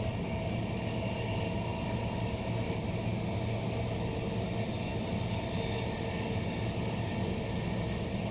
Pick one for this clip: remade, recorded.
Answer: recorded